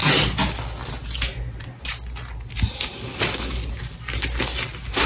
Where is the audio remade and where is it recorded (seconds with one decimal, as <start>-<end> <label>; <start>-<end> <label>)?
0.0-5.1 recorded